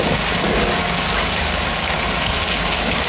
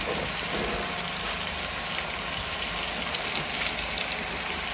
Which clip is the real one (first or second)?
second